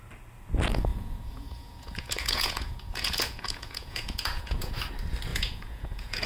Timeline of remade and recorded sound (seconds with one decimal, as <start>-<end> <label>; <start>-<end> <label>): 0.0-0.9 recorded; 0.9-4.7 remade; 4.7-5.3 recorded; 5.3-6.3 remade